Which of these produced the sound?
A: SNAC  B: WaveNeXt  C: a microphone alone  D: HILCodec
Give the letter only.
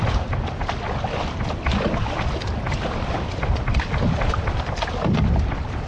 C